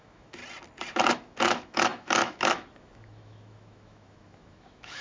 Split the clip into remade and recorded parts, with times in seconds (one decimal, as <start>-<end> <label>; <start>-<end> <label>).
0.0-0.4 remade; 0.4-1.1 recorded; 1.1-5.0 remade